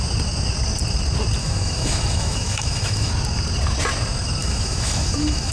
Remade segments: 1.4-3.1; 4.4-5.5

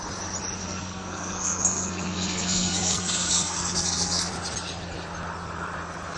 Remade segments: 0.6-4.3

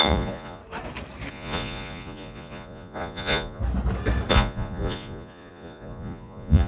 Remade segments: 0.0-0.6; 1.3-3.6; 4.3-6.7

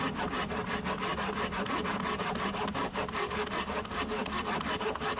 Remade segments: none